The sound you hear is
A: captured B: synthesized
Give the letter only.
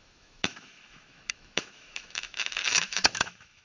B